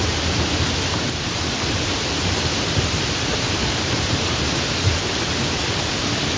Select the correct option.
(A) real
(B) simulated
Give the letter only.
A